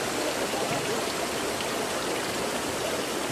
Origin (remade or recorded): recorded